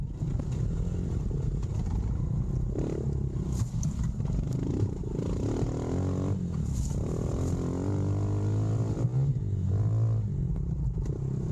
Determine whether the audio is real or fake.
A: real